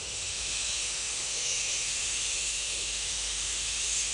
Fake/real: fake